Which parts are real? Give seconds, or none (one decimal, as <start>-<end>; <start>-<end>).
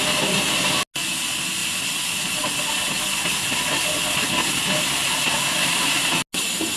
0.0-6.8